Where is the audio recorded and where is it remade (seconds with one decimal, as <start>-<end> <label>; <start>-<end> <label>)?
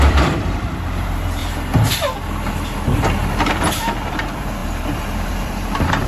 0.0-1.4 remade; 1.4-4.1 recorded; 4.1-6.1 remade